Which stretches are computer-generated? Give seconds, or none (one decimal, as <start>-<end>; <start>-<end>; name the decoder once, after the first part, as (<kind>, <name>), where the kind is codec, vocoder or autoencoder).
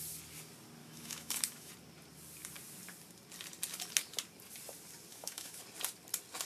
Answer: 0.8-1.7 (autoencoder, DAC-VAE); 5.1-5.6